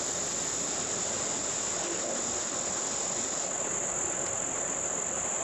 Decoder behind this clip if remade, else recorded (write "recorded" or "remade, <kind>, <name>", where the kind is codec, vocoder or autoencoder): recorded